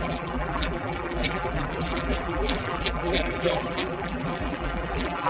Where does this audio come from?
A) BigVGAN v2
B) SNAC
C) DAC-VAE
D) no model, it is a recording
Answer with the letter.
A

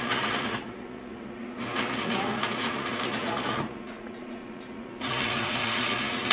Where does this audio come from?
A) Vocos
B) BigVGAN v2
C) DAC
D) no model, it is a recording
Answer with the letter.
A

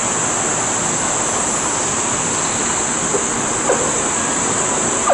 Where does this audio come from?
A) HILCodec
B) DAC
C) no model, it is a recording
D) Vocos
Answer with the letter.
C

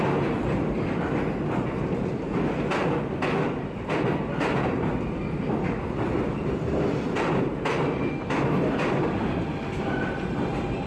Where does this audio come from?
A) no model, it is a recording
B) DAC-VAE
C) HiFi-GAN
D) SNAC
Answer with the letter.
A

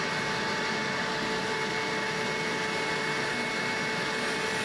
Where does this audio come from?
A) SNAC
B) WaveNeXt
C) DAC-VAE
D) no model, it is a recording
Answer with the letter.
D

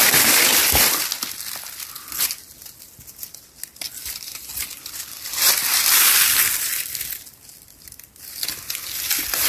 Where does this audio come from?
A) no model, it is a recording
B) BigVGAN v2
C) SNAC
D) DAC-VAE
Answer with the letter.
A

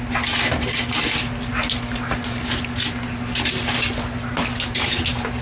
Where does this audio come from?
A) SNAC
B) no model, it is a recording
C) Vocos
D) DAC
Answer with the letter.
B